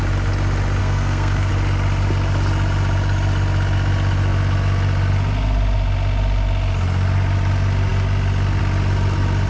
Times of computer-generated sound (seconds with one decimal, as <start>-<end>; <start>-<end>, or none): 0.8-1.5